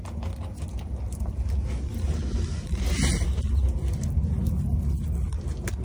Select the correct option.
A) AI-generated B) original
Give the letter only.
B